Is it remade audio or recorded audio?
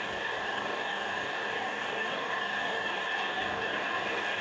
remade